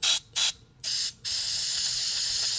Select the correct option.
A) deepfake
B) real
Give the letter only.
A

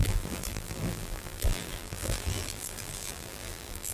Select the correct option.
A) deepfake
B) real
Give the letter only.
A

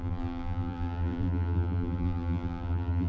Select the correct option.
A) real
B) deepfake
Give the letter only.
B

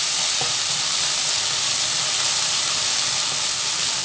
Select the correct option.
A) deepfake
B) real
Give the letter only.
B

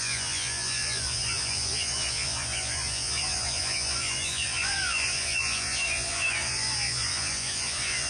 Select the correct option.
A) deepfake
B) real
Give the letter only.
A